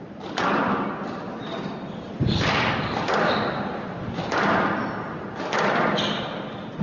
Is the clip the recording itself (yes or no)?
yes